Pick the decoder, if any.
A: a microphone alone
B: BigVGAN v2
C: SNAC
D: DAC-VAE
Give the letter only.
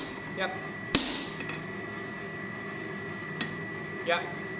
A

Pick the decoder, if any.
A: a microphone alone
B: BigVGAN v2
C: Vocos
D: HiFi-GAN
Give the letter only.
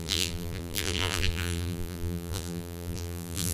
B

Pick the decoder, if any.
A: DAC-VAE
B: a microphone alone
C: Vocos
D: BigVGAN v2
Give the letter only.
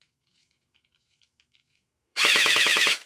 A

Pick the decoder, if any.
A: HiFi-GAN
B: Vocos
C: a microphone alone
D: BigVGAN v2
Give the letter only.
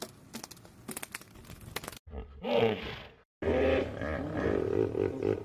C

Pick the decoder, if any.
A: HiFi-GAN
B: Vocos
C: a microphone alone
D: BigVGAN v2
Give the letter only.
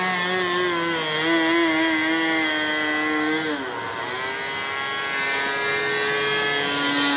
C